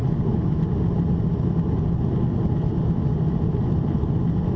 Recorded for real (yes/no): yes